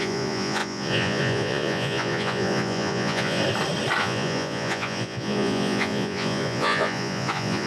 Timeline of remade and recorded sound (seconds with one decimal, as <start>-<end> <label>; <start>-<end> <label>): 0.0-3.4 remade; 3.4-4.0 recorded; 4.0-7.7 remade

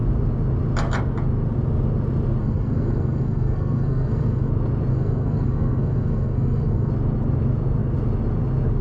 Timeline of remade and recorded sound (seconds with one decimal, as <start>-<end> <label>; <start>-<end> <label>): 0.0-2.4 recorded; 2.4-4.5 remade; 4.5-4.9 recorded; 4.9-6.9 remade; 6.9-8.8 recorded

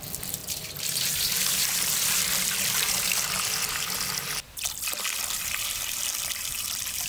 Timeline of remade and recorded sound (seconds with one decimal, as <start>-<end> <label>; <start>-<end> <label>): 0.0-7.1 recorded